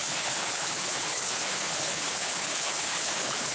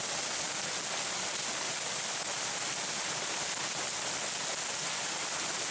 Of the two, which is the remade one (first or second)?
first